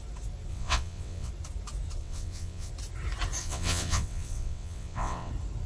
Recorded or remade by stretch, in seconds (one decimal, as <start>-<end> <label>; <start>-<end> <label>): 0.0-0.5 recorded; 0.5-1.3 remade; 1.3-2.0 recorded; 2.0-2.7 remade; 2.7-3.4 recorded; 3.4-5.3 remade; 5.3-5.7 recorded